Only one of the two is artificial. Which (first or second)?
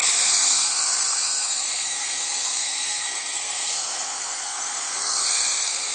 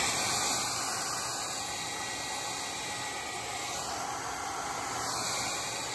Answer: first